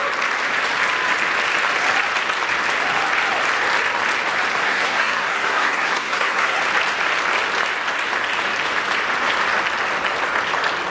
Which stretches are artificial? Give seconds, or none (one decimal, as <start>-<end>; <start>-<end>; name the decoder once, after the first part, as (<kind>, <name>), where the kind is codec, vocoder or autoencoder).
4.6-6.6 (codec, SNAC)